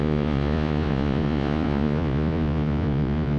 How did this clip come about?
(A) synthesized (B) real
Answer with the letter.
A